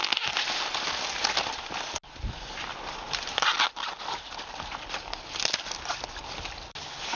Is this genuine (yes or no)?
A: yes